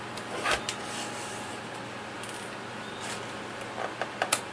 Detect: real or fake real